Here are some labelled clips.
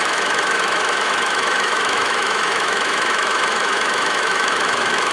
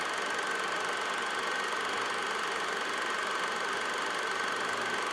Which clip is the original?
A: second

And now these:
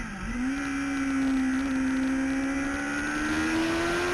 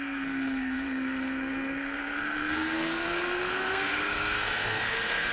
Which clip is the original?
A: first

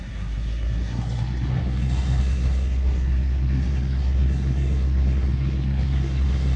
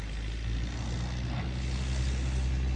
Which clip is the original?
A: second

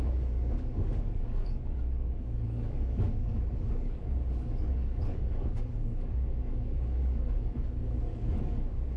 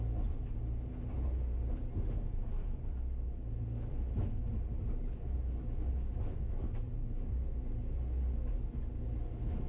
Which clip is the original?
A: second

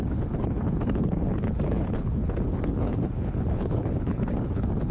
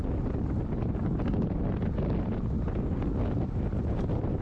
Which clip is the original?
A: second